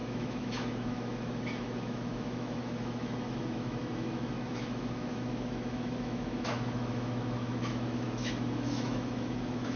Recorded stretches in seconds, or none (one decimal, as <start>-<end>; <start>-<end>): none